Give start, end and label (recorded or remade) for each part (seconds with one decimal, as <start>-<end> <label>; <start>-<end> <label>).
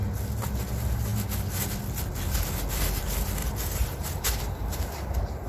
0.0-3.4 recorded; 3.4-4.4 remade; 4.4-5.5 recorded